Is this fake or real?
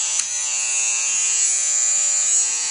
fake